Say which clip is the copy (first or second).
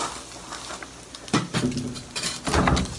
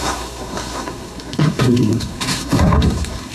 second